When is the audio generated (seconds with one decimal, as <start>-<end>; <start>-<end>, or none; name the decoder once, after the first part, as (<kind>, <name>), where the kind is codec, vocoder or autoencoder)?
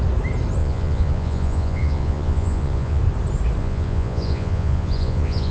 0.6-3.0 (vocoder, Vocos); 3.6-5.5